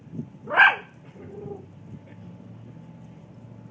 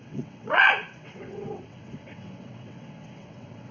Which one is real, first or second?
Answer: first